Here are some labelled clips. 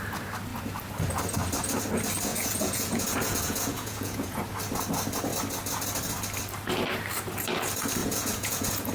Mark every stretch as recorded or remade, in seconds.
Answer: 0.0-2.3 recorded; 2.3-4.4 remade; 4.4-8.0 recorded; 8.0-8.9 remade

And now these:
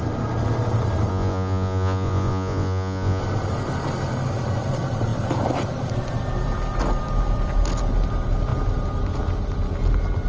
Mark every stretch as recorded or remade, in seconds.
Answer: 0.0-1.1 recorded; 1.1-3.2 remade; 3.2-10.3 recorded

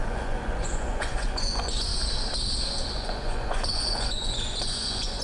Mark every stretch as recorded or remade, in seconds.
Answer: 0.0-1.9 remade; 1.9-2.9 recorded; 2.9-5.2 remade

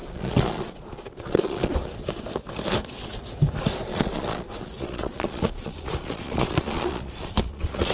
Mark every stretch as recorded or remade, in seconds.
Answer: 0.0-1.7 remade; 1.7-3.9 recorded; 3.9-7.9 remade

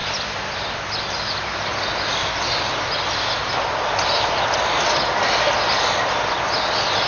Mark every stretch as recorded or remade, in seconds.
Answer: 0.0-7.1 recorded

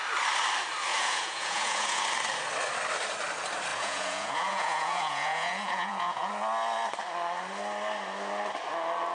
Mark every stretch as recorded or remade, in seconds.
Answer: 0.0-0.9 recorded; 0.9-2.0 remade; 2.0-3.7 recorded; 3.7-6.3 remade; 6.3-9.1 recorded

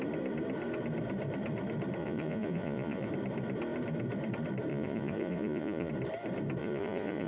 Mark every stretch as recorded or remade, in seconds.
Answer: 0.0-2.0 recorded; 2.0-3.1 remade; 3.1-4.7 recorded; 4.7-5.9 remade; 5.9-6.6 recorded; 6.6-7.3 remade